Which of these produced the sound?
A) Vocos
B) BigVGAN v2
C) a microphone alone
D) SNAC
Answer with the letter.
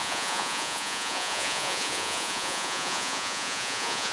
A